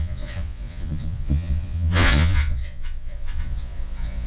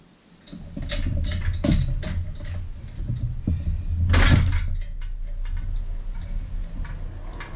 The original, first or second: second